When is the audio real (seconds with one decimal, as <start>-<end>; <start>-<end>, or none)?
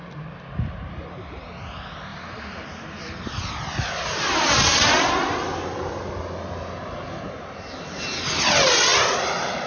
0.0-2.1; 3.9-8.9